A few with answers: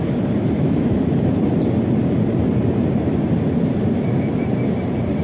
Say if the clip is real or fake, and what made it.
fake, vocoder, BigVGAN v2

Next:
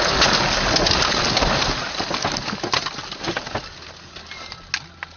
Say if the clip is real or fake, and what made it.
real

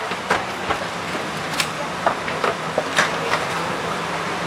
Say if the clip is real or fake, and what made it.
fake, vocoder, BigVGAN v2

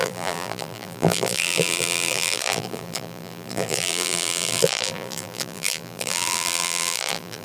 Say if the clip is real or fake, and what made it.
fake, vocoder, BigVGAN v2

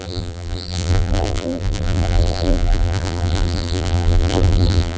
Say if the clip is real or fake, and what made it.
fake, vocoder, BigVGAN v2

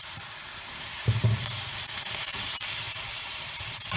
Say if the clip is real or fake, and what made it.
fake, vocoder, BigVGAN v2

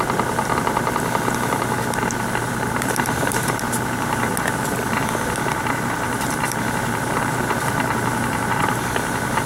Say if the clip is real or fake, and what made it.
fake, vocoder, BigVGAN v2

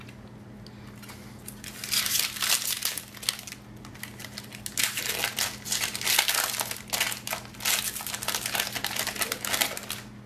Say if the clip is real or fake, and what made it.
real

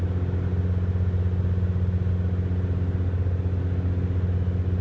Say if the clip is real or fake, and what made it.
real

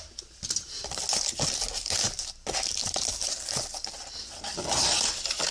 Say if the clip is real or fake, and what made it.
real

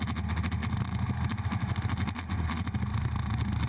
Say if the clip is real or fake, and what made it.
real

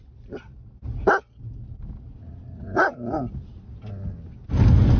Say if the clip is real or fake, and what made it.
real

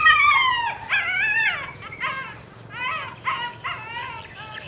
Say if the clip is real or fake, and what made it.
real